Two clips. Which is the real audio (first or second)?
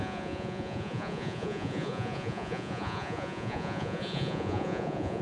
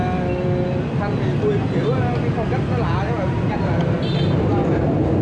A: second